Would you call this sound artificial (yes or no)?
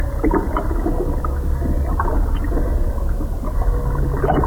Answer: no